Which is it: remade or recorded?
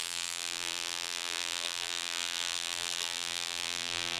remade